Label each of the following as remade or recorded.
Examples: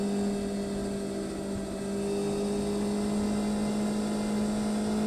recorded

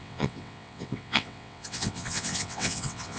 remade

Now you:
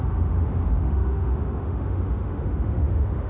remade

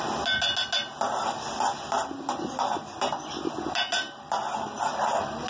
recorded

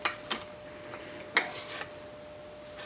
recorded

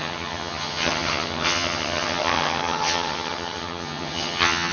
remade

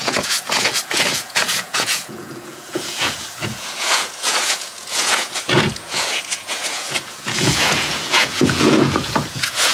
remade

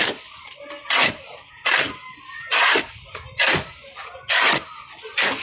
recorded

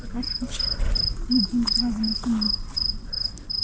recorded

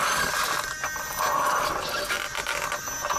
recorded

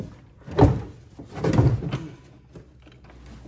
recorded